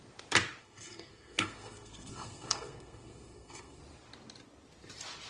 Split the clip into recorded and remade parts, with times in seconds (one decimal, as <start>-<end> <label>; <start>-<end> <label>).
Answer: 0.0-0.6 recorded; 0.6-3.8 remade; 3.8-5.3 recorded